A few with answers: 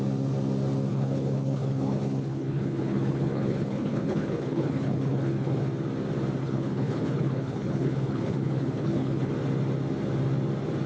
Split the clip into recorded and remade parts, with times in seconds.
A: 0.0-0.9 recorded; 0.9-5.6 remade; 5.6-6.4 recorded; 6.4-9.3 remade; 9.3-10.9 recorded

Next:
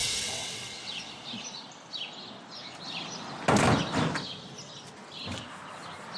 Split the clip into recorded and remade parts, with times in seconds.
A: 0.0-1.1 remade; 1.1-6.2 recorded

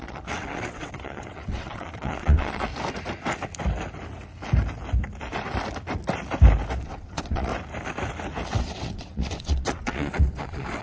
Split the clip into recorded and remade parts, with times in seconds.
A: 0.0-2.7 remade; 2.7-6.8 recorded; 6.8-7.5 remade; 7.5-8.5 recorded; 8.5-10.8 remade

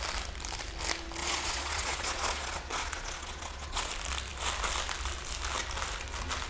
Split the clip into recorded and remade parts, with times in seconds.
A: 0.0-1.2 recorded; 1.2-3.9 remade; 3.9-6.5 recorded